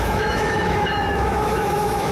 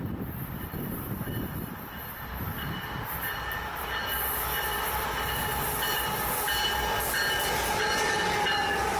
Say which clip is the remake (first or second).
first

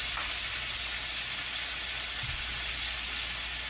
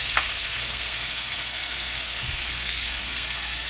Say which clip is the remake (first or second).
second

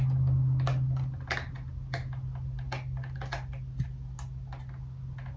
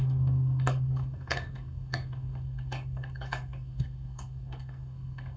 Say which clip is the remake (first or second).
second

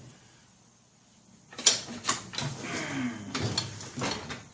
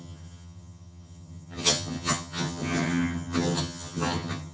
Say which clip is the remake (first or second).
second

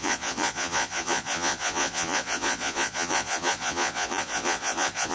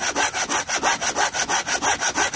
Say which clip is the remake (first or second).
first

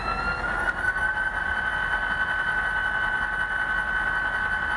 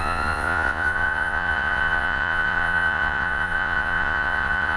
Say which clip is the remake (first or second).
second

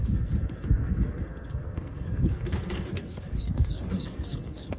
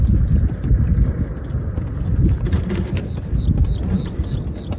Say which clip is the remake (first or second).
first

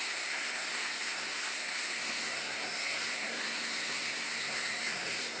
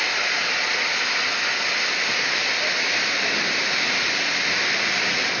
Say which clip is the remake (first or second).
first